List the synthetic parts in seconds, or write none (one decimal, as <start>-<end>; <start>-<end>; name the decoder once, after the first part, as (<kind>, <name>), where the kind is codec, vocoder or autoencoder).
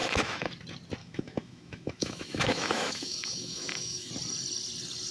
0.0-0.5 (autoencoder, DAC-VAE); 1.0-4.1